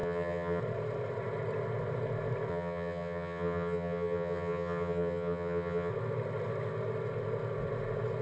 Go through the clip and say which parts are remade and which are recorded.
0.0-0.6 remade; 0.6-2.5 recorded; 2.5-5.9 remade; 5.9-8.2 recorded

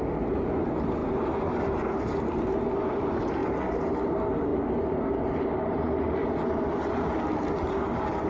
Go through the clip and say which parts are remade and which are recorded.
0.0-8.3 remade

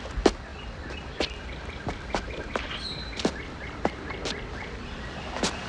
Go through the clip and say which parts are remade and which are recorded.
0.0-0.5 recorded; 0.5-3.9 remade; 3.9-5.7 recorded

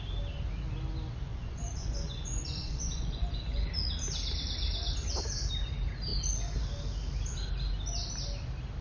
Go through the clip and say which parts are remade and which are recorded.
0.0-1.3 recorded; 1.3-3.7 remade; 3.7-8.8 recorded

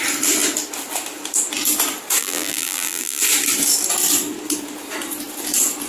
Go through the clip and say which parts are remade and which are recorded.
0.0-2.2 recorded; 2.2-3.2 remade; 3.2-5.9 recorded